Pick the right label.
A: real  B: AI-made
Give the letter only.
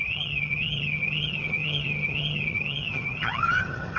B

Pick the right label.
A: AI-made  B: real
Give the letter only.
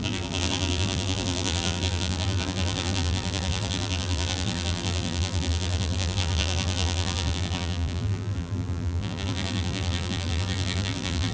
A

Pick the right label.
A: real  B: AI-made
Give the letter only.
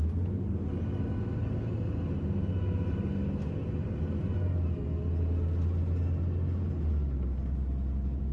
A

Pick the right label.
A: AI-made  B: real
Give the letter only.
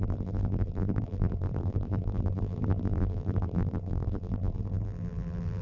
A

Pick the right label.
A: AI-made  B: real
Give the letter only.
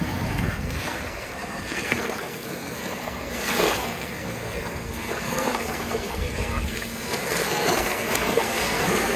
A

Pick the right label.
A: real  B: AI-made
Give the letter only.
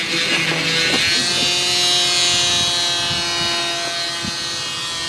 A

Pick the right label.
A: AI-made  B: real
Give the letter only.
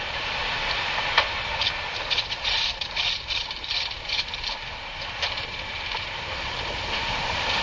A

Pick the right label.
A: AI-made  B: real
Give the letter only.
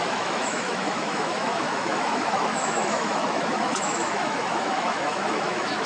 A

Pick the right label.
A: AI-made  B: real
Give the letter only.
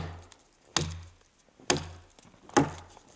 B